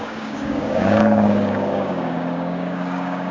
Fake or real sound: fake